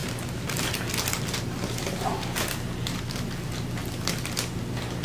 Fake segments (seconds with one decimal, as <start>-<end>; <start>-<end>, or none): none